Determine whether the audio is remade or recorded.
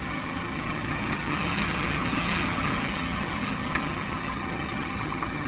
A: remade